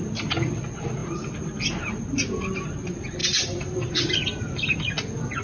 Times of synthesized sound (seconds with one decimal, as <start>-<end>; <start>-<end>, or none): 3.2-3.9